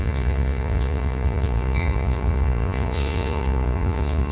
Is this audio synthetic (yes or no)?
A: yes